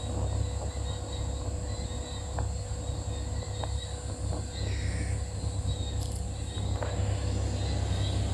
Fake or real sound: real